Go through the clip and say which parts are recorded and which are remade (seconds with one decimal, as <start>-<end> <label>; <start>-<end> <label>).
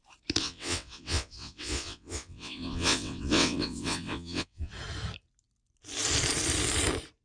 0.0-0.4 recorded; 0.4-4.7 remade; 4.7-7.2 recorded